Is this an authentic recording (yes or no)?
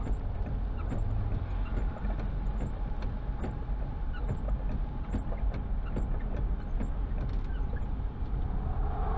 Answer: yes